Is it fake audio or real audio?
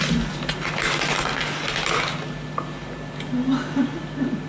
real